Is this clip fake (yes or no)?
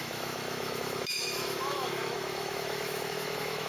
yes